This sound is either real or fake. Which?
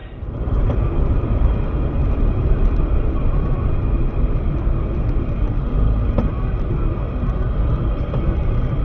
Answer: fake